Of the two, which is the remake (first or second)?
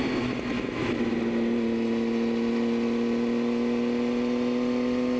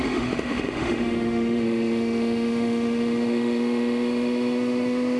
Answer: second